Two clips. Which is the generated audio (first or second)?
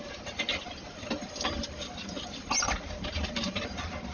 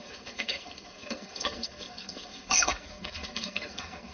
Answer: second